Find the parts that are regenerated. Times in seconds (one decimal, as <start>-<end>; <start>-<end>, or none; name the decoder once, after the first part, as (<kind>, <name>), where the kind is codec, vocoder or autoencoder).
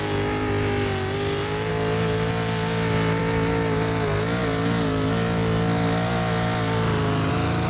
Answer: none